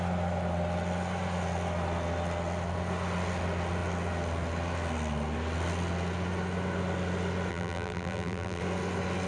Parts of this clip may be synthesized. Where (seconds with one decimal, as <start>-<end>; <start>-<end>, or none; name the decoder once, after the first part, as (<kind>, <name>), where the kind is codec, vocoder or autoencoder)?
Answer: 7.5-8.6 (vocoder, BigVGAN v2)